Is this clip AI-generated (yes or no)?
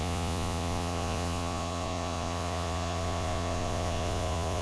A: yes